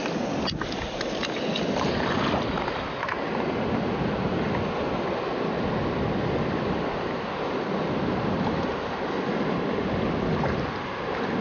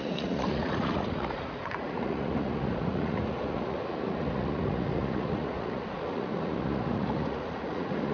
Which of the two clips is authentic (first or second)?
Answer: first